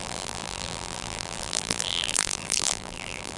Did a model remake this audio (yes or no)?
yes